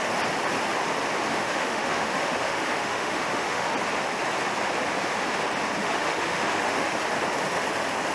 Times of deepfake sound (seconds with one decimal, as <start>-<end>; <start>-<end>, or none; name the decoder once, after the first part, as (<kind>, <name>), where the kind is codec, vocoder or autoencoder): 1.3-3.7 (autoencoder, DAC-VAE); 5.8-6.9